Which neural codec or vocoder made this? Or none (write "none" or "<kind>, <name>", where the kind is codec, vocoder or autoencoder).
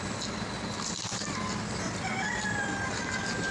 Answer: none